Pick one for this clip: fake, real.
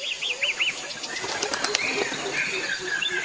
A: real